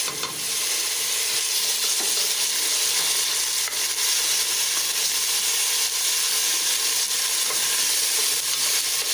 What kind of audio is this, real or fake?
real